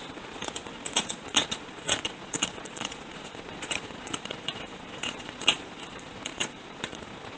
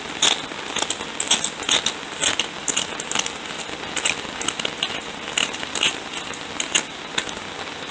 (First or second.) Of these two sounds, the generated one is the first